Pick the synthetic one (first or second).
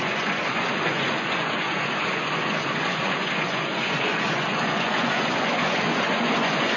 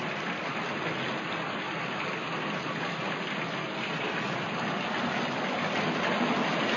first